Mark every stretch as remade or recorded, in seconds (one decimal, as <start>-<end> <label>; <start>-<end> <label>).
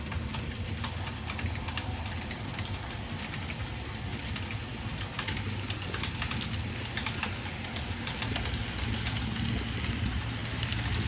0.0-11.1 recorded